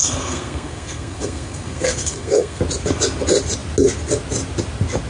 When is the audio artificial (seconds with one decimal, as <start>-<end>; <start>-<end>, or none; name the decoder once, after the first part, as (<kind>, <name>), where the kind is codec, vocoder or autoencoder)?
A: 0.0-2.6 (codec, SNAC)